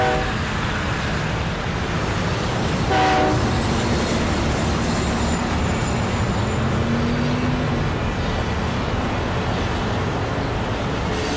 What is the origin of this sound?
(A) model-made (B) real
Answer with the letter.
B